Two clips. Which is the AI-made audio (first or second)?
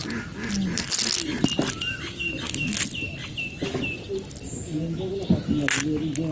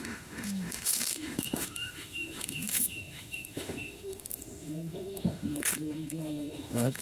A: second